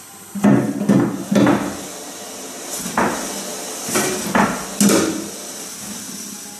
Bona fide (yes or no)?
yes